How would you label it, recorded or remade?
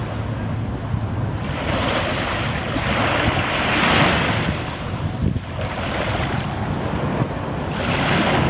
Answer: recorded